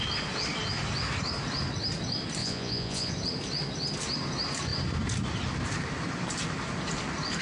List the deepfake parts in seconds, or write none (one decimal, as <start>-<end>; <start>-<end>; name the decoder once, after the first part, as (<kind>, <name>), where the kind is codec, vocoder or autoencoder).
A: 2.4-3.1 (vocoder, Vocos)